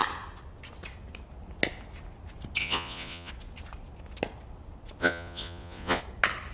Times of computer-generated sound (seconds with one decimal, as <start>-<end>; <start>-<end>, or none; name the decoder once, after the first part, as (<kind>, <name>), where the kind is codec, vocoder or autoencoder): 2.6-3.3 (vocoder, Vocos); 5.0-6.0